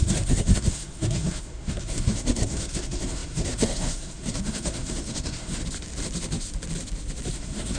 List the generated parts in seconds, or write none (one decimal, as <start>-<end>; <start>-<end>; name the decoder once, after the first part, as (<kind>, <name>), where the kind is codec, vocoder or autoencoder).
0.0-5.6 (codec, SNAC); 7.3-7.8